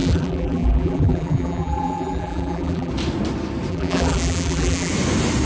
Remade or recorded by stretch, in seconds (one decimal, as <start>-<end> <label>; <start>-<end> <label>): 0.0-2.9 remade; 2.9-3.7 recorded; 3.7-4.9 remade; 4.9-5.5 recorded